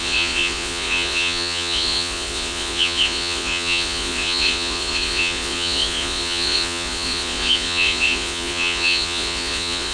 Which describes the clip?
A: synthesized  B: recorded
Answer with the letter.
A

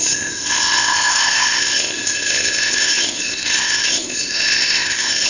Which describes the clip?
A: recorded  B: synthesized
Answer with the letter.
B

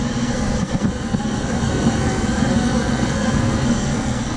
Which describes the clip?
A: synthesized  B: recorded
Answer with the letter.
A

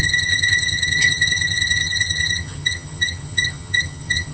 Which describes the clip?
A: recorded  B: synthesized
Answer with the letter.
B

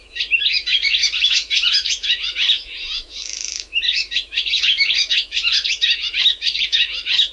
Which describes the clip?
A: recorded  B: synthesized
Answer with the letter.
B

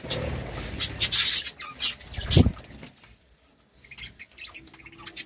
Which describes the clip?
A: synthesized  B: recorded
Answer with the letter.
B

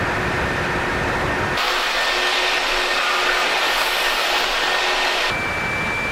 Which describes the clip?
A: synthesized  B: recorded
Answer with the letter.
B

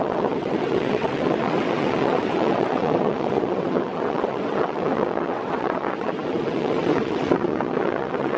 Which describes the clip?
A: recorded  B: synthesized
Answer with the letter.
B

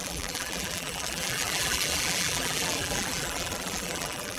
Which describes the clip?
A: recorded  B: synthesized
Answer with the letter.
B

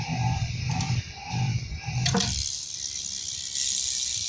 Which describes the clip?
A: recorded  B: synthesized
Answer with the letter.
B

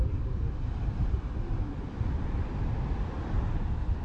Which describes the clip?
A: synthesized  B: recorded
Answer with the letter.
B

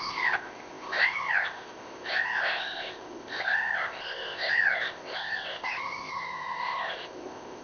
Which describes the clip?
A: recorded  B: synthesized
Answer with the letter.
B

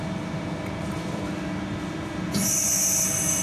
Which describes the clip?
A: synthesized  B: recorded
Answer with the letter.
B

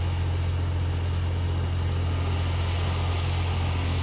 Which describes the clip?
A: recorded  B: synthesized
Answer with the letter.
A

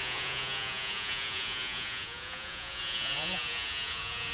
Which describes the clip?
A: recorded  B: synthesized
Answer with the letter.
B